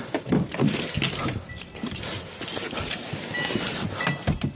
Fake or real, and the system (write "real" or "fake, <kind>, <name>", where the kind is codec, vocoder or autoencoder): real